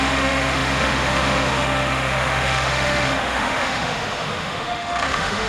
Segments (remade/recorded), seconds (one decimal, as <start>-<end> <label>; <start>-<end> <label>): 0.0-5.5 remade